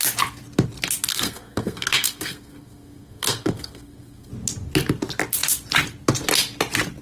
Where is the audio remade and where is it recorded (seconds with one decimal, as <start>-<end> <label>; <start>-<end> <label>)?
0.0-1.1 recorded; 1.1-4.3 remade; 4.3-7.0 recorded